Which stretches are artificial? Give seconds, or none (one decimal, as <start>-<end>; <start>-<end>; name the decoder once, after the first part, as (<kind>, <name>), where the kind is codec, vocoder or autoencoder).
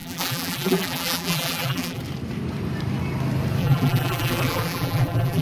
0.0-2.0 (vocoder, BigVGAN v2); 3.6-5.4